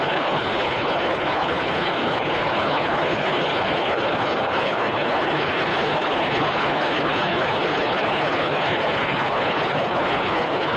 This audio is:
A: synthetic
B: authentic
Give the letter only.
A